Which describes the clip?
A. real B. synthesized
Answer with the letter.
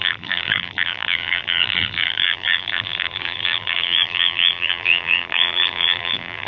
B